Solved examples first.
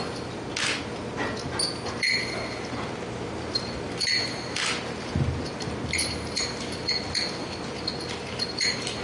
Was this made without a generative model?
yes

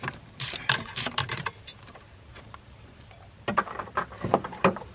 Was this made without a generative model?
no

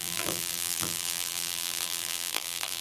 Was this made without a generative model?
no